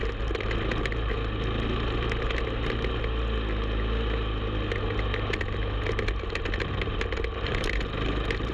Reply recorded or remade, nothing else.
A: recorded